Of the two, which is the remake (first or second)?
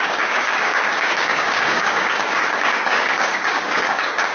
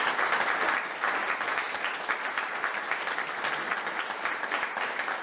first